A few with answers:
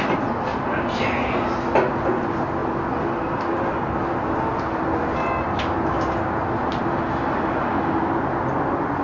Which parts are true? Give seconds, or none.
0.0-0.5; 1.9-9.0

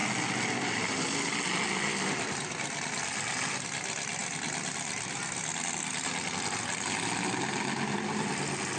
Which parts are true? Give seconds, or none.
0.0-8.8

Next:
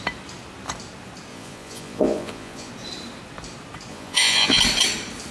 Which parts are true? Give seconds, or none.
0.0-1.3; 2.7-3.9; 4.6-5.3

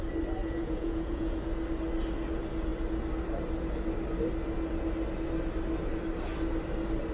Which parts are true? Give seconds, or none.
0.0-0.4; 1.4-7.1